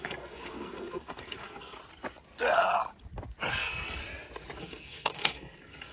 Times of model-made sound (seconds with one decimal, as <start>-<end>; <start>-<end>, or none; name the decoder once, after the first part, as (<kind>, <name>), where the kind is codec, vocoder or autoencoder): 0.0-1.8 (codec, SNAC); 3.5-4.0; 4.6-5.9